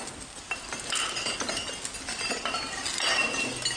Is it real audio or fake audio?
real